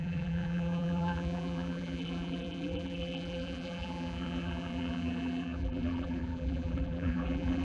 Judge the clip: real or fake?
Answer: fake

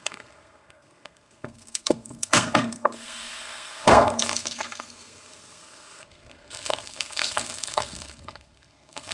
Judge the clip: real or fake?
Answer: fake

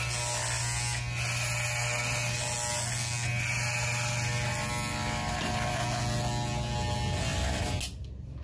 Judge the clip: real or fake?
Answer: real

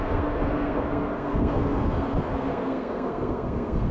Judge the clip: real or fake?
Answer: fake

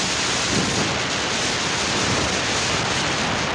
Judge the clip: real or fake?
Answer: real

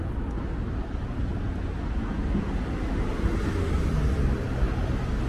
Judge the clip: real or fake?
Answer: real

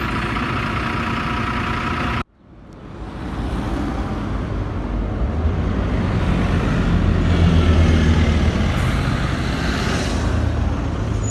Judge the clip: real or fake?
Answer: real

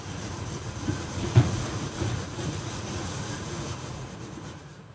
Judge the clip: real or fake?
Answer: fake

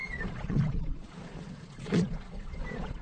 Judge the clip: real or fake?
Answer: fake